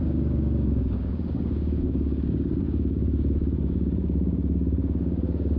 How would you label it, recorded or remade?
remade